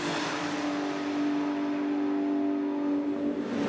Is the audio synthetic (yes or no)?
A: no